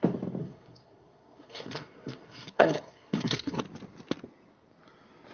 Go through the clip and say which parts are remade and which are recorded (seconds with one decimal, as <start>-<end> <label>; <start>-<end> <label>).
0.0-0.4 recorded; 0.4-3.6 remade; 3.6-5.3 recorded